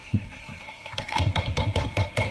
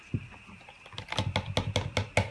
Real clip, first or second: second